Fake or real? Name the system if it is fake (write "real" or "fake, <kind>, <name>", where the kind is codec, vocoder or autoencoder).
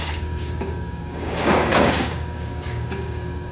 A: fake, codec, DAC